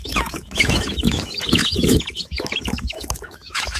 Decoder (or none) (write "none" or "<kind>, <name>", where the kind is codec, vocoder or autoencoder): autoencoder, DAC-VAE